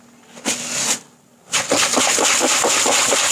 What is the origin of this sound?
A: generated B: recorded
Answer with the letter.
B